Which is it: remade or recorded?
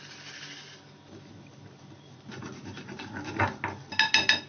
recorded